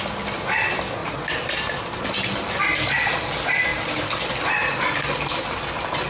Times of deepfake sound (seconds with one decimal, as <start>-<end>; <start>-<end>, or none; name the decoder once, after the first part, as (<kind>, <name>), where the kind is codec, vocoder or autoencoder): none